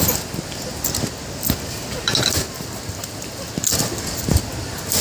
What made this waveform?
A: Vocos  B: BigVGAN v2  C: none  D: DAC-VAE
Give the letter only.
C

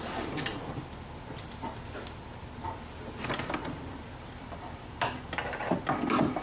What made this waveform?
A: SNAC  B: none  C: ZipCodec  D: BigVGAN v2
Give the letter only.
D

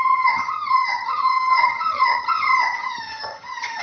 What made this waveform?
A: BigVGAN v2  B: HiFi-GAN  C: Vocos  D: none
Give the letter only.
B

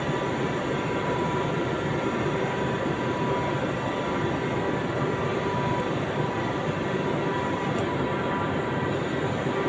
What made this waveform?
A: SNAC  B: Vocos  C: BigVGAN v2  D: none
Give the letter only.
D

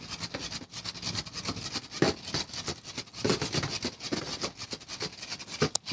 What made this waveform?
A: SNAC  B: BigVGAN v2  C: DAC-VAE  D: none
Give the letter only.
D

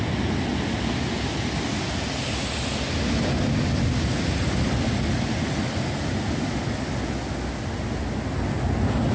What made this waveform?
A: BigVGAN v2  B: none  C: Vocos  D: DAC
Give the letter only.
B